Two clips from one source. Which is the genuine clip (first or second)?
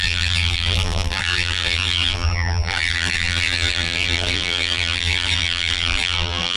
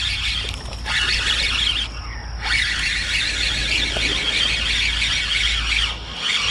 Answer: second